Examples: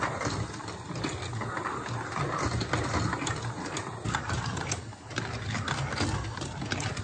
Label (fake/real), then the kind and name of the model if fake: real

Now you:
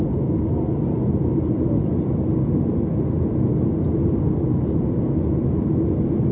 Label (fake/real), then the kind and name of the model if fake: real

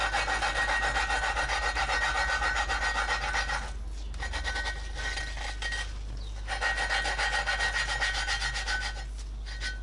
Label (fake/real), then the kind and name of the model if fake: real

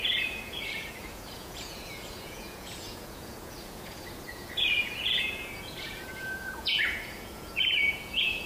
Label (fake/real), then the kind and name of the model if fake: fake, vocoder, Vocos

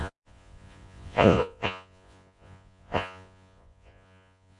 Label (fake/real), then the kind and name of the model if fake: fake, vocoder, Vocos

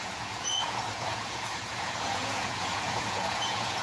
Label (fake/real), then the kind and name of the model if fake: fake, vocoder, Vocos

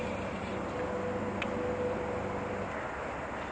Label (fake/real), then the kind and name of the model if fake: real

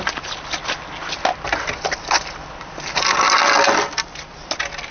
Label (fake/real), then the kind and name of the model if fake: real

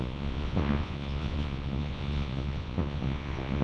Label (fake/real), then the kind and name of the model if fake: fake, vocoder, Vocos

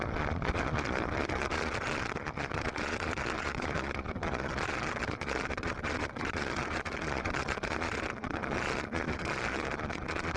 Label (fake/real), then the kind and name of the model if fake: fake, vocoder, Vocos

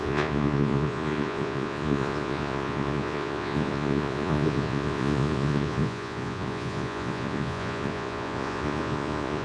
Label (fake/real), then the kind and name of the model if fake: fake, vocoder, Vocos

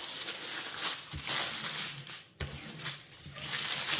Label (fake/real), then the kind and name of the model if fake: real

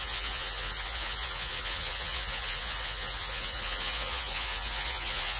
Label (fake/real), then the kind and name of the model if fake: fake, vocoder, Vocos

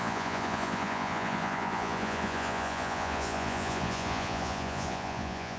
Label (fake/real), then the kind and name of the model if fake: fake, vocoder, Vocos